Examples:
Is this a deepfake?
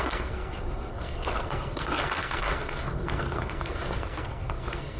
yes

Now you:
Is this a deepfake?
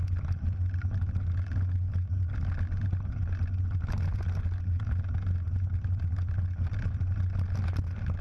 no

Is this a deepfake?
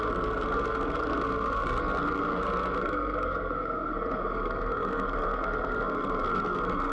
yes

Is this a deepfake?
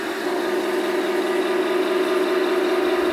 no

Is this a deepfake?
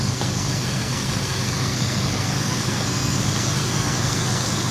yes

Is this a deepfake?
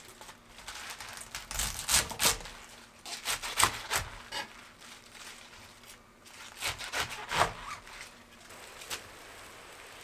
no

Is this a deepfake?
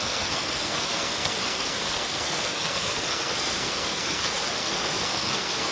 yes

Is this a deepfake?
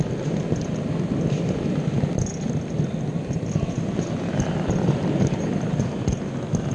no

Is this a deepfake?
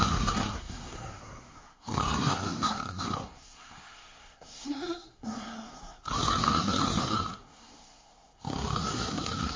yes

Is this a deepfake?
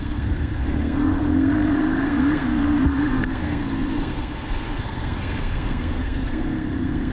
yes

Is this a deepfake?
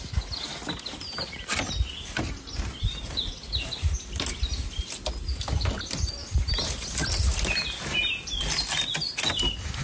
no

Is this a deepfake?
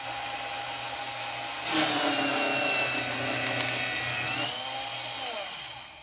no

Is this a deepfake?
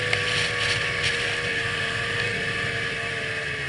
no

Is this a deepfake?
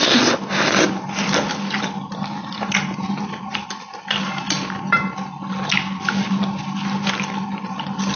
no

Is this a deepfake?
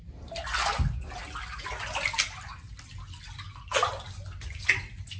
no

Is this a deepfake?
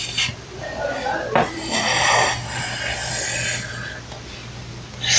no